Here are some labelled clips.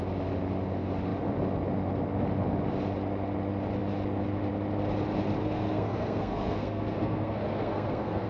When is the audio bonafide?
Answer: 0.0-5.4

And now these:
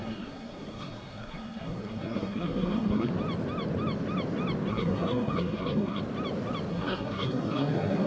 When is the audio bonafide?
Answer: 3.1-4.7; 6.0-6.7

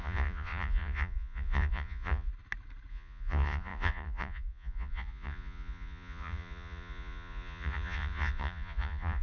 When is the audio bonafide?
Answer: 2.3-2.9

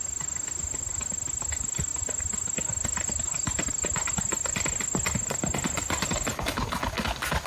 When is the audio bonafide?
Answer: 0.0-7.5

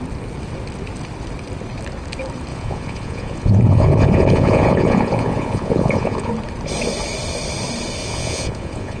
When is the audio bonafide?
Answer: 0.0-2.5; 6.3-8.1

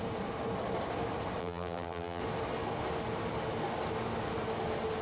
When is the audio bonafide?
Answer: 0.0-1.4; 2.2-5.0